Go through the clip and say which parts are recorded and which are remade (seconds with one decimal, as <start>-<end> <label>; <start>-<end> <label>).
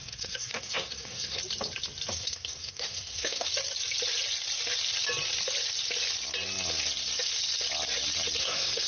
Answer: 0.0-1.4 remade; 1.4-2.1 recorded; 2.1-3.5 remade; 3.5-8.4 recorded; 8.4-8.9 remade